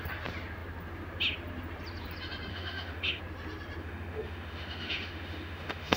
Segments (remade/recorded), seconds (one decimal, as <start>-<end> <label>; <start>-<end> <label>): 0.0-2.5 recorded; 2.5-3.2 remade; 3.2-3.8 recorded; 3.8-6.0 remade